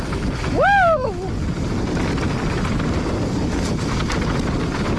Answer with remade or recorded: recorded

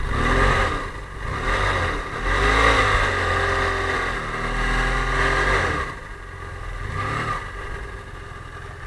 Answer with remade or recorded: recorded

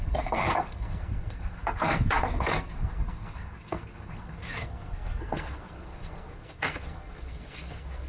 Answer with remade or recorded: remade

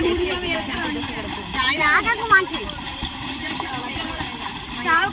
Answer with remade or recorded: remade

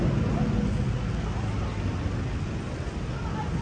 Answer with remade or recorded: recorded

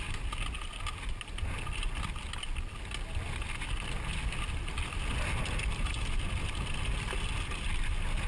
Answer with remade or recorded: recorded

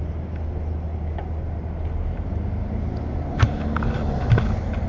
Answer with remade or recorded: recorded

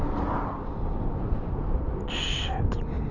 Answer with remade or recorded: recorded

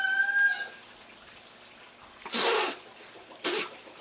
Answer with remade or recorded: recorded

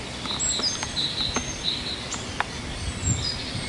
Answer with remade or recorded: recorded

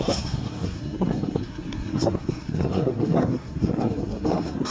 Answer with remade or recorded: remade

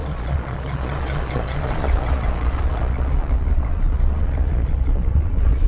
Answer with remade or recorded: remade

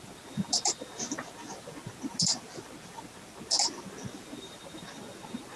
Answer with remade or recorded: recorded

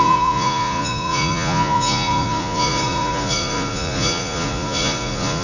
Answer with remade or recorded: remade